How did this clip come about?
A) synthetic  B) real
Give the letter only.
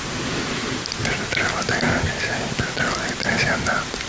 B